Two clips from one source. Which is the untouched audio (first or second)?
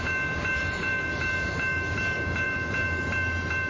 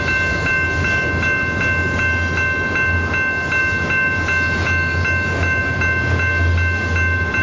second